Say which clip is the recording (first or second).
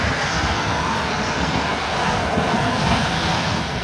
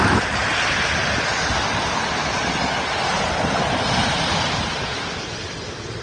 second